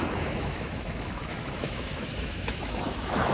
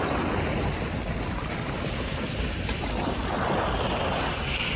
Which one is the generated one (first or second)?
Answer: first